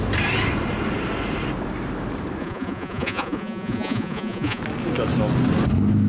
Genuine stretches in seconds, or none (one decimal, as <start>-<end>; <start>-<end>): 0.0-2.4; 4.6-6.1

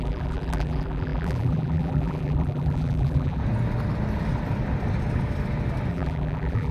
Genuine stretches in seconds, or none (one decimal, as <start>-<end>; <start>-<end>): 3.4-5.9